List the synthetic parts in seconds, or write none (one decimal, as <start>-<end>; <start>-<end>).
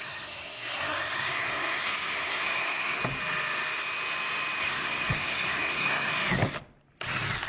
0.0-3.0; 4.6-6.1